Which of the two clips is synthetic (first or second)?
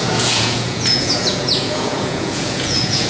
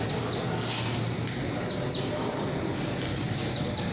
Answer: first